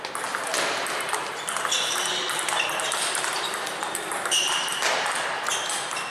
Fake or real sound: real